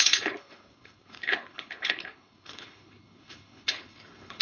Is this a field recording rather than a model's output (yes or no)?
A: no